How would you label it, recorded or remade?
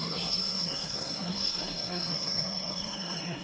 remade